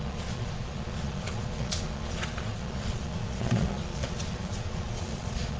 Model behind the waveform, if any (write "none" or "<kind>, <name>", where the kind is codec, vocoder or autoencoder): vocoder, Vocos